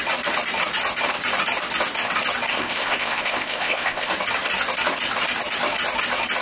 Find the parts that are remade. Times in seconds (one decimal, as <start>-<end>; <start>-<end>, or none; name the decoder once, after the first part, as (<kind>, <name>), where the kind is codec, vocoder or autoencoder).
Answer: 2.5-4.1 (codec, ZipCodec)